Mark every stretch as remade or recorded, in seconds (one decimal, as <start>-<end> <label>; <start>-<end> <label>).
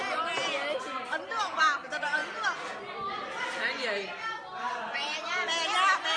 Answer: 0.0-0.8 recorded; 0.8-2.2 remade; 2.2-2.9 recorded; 2.9-6.2 remade